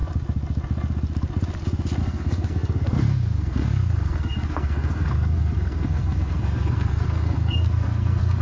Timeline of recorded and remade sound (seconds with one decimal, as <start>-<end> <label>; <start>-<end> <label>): 0.0-2.0 recorded; 2.0-8.4 remade